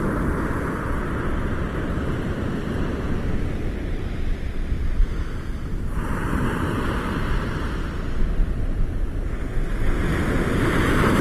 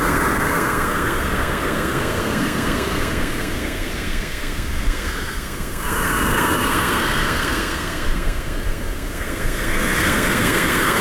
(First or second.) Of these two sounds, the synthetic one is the second